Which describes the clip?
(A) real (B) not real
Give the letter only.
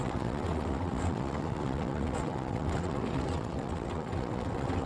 B